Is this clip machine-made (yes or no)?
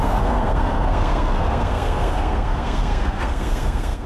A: yes